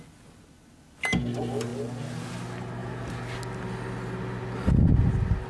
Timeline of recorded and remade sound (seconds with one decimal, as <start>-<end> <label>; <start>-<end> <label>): 0.0-5.5 recorded